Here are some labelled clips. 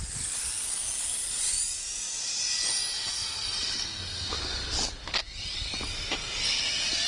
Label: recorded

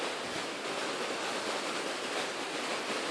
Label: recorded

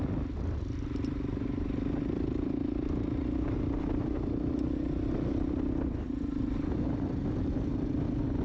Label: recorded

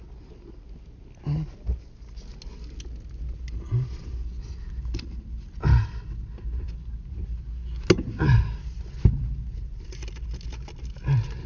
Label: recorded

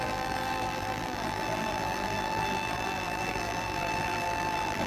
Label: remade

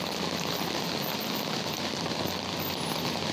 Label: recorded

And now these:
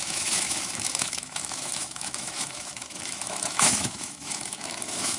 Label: remade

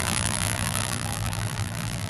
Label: remade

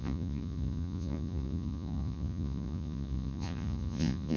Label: remade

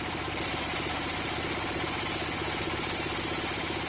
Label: recorded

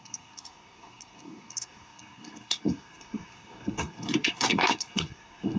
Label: remade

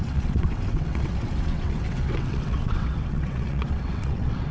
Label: remade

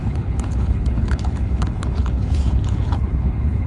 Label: remade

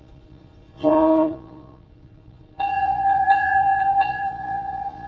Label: remade